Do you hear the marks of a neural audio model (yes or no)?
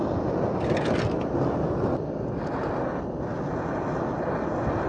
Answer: no